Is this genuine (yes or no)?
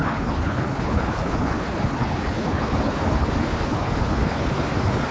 no